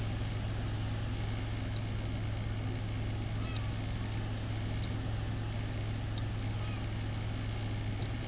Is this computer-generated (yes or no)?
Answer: no